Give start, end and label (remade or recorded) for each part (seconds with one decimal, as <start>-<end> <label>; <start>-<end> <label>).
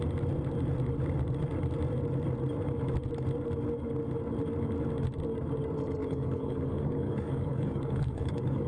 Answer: 0.0-6.0 recorded; 6.0-8.7 remade